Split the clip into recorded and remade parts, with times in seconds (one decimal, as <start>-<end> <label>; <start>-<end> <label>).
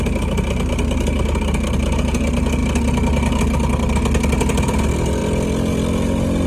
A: 0.0-6.5 recorded